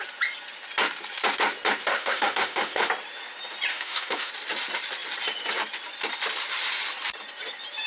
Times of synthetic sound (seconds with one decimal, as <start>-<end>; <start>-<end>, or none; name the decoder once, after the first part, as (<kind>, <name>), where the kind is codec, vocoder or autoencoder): 1.9-2.9 (autoencoder, DAC-VAE); 3.7-4.3